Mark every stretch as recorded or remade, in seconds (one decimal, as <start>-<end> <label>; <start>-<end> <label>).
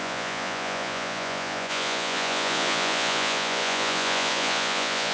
0.0-5.1 remade